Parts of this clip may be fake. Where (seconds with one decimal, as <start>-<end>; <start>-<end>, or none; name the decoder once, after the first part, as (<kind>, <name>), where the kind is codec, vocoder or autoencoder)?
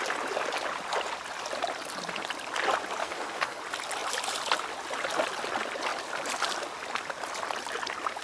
3.0-3.6 (codec, SNAC)